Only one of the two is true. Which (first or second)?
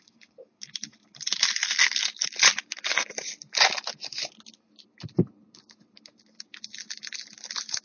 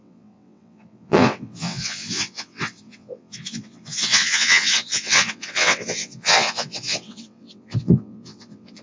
first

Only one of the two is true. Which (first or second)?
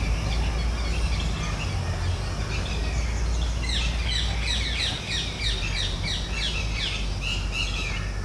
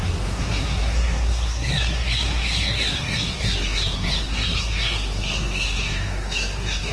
first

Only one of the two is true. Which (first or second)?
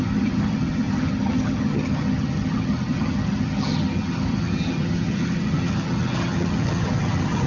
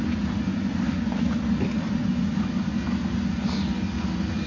second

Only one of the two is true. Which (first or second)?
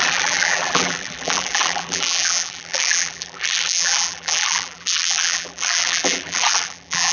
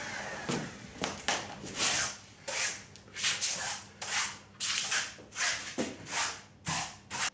second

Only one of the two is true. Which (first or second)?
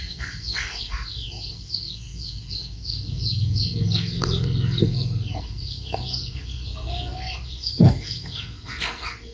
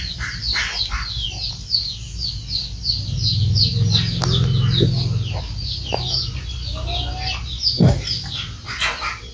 second